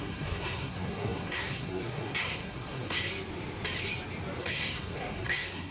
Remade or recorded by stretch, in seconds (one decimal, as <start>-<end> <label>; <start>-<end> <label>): 0.0-3.1 remade; 3.1-4.4 recorded; 4.4-5.7 remade